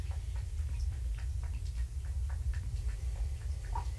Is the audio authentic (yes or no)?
no